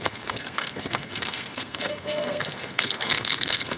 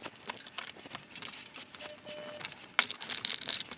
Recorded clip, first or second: second